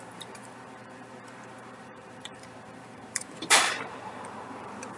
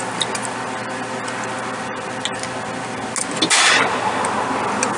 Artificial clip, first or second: first